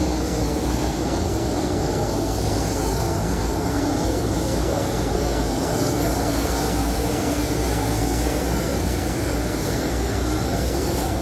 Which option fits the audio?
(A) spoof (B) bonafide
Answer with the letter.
A